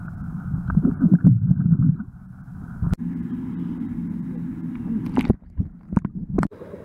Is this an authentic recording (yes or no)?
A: yes